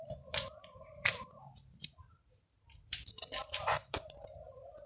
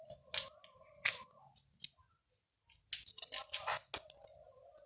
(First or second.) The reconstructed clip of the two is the first